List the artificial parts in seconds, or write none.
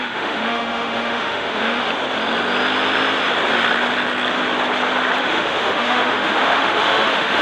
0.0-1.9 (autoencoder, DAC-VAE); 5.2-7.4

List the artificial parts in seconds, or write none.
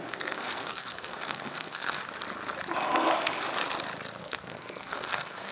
0.0-2.0 (codec, SNAC); 2.9-3.3; 4.2-5.5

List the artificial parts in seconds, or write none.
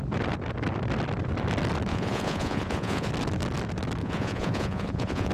1.9-3.1 (vocoder, Vocos); 4.0-5.3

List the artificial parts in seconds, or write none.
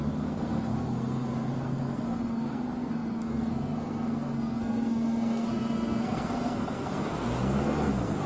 0.0-8.3 (codec, SNAC)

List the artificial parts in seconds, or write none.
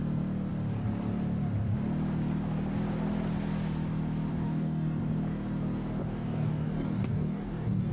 4.3-5.0 (codec, DAC); 6.0-7.9